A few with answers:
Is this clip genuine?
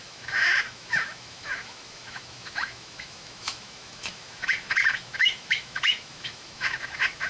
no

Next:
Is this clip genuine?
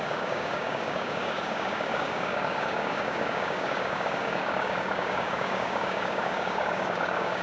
no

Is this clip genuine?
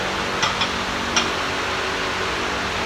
yes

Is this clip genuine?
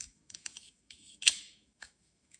no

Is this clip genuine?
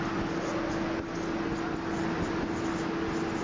yes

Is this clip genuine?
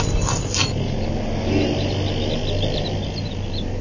yes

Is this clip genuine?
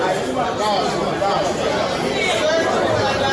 yes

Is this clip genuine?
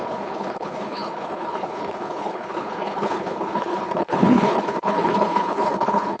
no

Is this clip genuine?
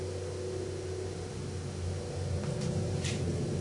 yes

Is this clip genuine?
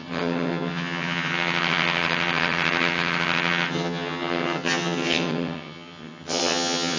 no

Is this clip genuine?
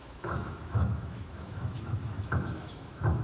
no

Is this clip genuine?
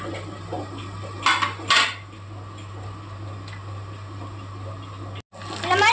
yes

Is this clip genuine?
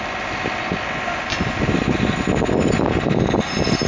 yes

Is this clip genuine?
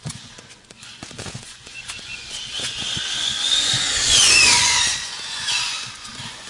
no